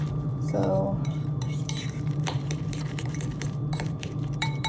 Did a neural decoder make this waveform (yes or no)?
yes